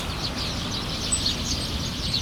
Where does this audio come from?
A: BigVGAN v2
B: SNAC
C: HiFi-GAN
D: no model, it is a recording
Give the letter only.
D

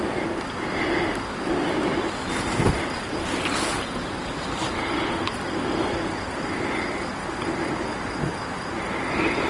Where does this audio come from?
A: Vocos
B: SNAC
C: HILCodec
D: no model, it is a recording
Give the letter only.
D